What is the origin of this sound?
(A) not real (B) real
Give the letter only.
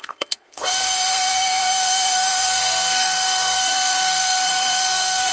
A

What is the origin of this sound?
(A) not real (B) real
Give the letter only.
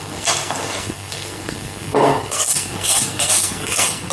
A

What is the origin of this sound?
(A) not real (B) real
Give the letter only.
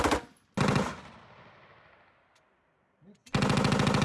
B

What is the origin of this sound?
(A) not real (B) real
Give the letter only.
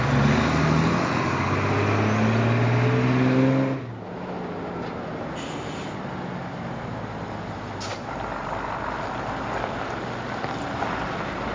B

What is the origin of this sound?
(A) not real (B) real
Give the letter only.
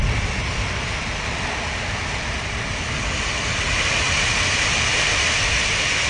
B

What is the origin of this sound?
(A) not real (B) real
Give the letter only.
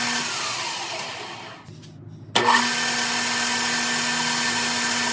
B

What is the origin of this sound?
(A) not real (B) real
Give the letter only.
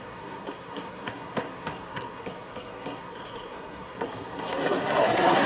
A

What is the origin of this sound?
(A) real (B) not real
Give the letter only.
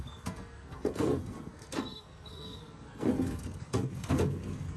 B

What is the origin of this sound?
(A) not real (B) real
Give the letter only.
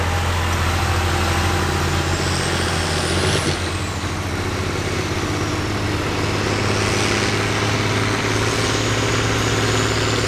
B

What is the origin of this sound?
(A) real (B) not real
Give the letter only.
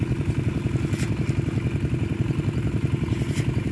A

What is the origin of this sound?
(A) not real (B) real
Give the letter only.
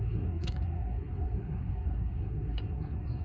A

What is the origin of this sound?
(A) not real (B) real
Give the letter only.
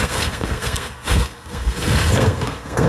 A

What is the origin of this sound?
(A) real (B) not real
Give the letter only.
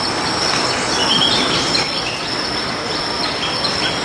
A